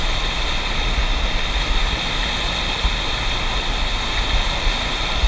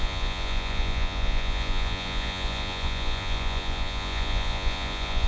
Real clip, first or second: first